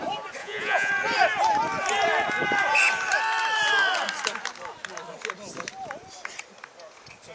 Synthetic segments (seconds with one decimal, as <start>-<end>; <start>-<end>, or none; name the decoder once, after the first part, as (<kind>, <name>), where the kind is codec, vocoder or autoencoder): 0.4-0.9 (vocoder, Vocos)